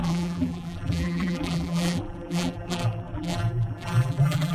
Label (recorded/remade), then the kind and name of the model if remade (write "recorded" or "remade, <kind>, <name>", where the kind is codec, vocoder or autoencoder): remade, vocoder, BigVGAN v2